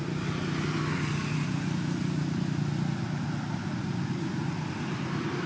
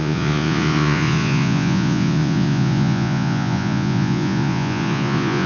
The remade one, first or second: second